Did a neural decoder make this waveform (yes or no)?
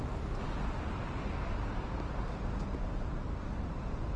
no